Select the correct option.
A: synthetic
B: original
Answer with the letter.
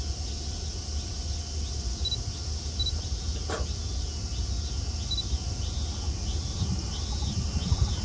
B